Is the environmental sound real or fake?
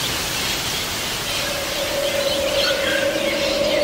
real